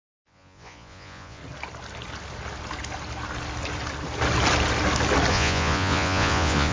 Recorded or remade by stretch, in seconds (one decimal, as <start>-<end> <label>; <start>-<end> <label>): 0.0-1.4 remade; 1.4-5.3 recorded; 5.3-6.7 remade